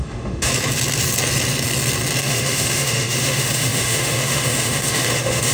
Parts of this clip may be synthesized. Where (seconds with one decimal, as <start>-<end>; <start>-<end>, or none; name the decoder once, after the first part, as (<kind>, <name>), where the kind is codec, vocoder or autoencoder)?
0.0-0.5 (autoencoder, DAC-VAE); 2.2-5.5